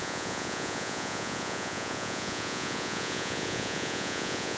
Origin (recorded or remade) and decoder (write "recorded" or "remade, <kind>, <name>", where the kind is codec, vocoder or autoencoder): remade, vocoder, Vocos